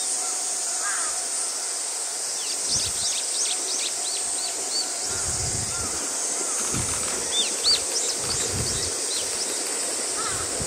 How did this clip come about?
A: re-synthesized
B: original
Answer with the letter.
B